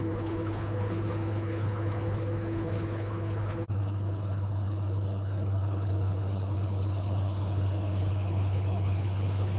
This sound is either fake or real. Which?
fake